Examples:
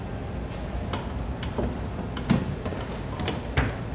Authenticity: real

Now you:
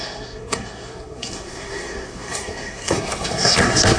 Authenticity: fake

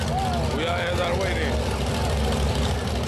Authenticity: real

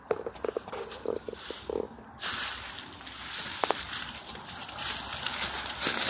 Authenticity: real